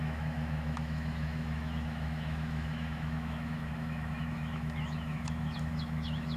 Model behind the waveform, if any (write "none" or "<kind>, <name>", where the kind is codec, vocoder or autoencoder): autoencoder, DAC-VAE